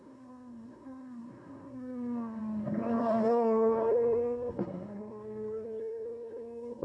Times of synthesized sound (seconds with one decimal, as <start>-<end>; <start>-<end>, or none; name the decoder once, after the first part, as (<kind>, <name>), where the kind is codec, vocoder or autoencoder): 0.0-6.8 (codec, SNAC)